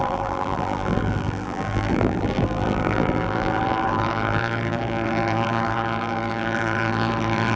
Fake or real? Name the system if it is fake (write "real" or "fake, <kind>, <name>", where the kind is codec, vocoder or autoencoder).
fake, vocoder, BigVGAN v2